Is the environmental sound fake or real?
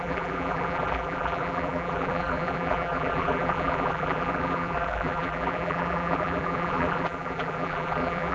fake